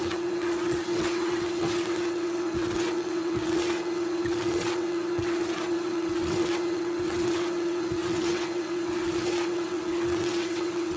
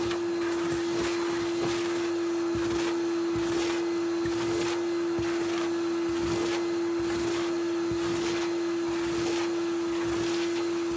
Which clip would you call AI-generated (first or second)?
first